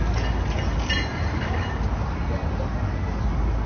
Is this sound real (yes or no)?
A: yes